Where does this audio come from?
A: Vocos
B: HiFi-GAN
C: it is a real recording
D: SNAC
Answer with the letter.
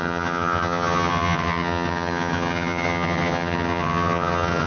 B